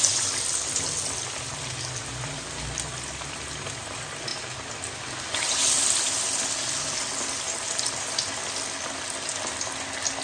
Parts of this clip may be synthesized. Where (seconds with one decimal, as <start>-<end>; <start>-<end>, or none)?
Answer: none